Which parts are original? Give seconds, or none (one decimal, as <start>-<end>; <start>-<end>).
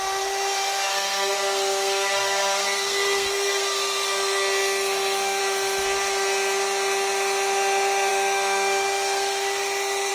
0.0-0.9; 5.4-8.1